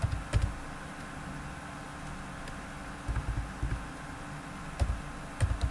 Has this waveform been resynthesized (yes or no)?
no